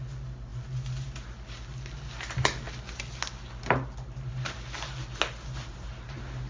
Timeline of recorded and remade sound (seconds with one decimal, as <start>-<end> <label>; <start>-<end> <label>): 0.0-6.5 recorded